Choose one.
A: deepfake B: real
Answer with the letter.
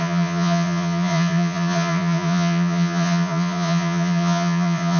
A